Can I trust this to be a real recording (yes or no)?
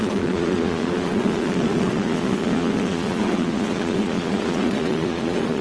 no